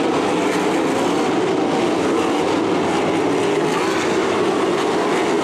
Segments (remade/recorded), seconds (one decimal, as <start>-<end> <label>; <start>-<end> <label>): 0.0-4.2 recorded; 4.2-4.7 remade; 4.7-5.4 recorded